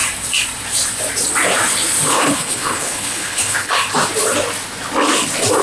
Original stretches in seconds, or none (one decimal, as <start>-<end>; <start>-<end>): 0.0-2.1; 3.7-5.6